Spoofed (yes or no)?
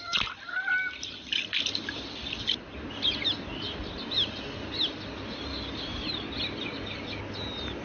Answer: no